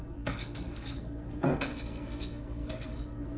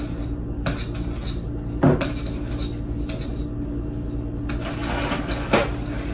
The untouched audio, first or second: second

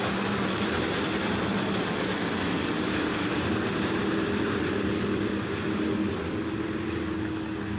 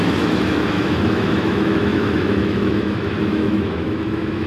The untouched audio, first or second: first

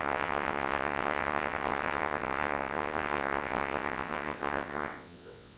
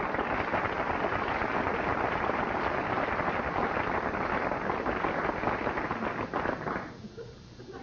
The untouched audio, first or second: second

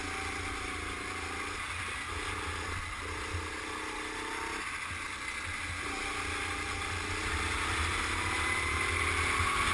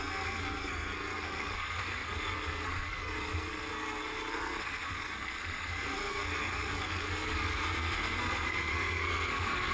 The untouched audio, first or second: first